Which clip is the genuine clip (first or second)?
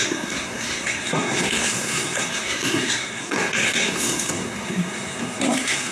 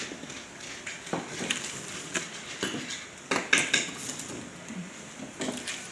second